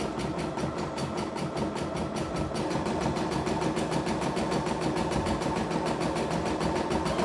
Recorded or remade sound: recorded